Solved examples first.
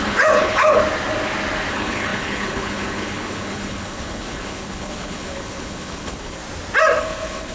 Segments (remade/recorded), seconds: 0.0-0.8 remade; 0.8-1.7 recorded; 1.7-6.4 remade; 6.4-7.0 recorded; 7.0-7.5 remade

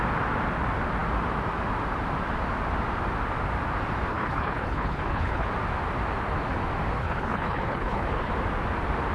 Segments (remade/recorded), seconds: 0.0-4.1 recorded; 4.1-5.5 remade; 5.5-7.0 recorded; 7.0-8.3 remade; 8.3-9.1 recorded

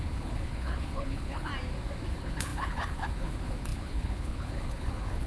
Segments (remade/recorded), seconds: 0.0-1.5 remade; 1.5-2.1 recorded; 2.1-5.3 remade

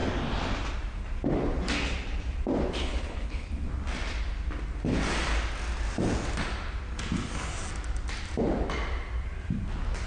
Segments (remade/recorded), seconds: 0.0-2.8 recorded; 2.8-3.5 remade; 3.5-10.1 recorded

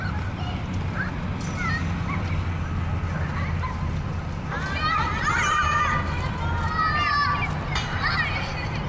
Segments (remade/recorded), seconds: 0.0-8.9 recorded